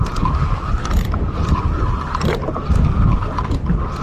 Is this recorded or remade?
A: recorded